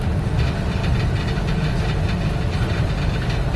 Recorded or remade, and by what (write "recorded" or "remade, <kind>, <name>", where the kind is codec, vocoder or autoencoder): recorded